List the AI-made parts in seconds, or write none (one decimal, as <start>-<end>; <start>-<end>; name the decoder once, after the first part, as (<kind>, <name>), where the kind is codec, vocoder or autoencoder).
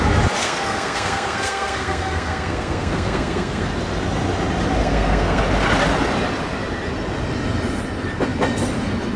0.4-3.7 (codec, SNAC); 4.8-5.4